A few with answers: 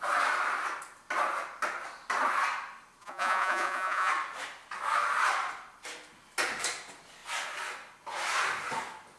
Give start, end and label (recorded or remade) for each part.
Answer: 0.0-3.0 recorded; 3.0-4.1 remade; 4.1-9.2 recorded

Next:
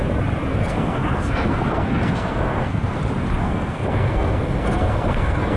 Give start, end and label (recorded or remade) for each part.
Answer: 0.0-0.5 recorded; 0.5-3.0 remade; 3.0-3.4 recorded; 3.4-5.6 remade